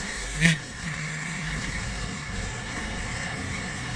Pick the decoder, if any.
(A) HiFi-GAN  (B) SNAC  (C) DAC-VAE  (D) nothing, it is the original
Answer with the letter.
B